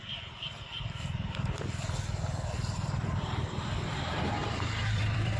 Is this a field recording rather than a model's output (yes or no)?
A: no